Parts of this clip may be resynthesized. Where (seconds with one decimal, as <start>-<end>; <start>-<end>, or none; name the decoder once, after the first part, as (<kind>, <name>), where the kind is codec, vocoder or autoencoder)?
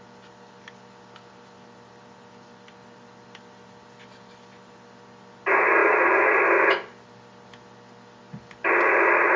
none